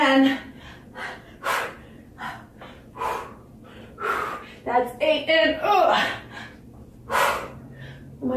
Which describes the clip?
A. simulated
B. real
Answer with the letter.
B